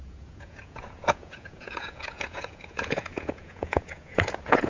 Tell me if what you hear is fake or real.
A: fake